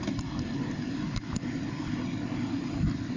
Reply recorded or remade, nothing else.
recorded